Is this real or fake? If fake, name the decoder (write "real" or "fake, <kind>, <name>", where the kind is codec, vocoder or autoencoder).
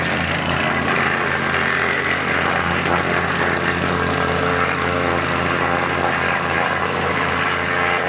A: real